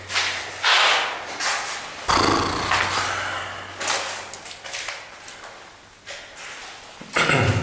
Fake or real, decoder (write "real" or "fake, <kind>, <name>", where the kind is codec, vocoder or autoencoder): real